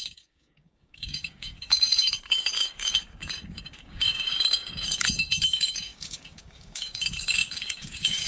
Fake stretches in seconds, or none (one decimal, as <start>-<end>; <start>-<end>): 0.0-8.3